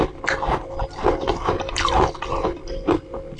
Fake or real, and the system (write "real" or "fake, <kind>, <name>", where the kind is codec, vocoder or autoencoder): real